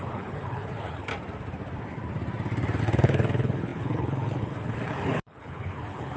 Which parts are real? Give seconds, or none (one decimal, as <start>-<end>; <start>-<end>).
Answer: 1.1-2.8